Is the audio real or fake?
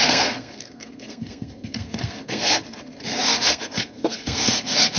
fake